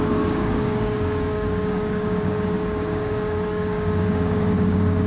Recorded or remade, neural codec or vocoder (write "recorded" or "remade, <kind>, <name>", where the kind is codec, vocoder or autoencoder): remade, codec, DAC